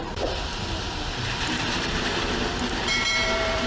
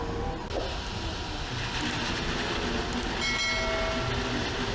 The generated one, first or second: first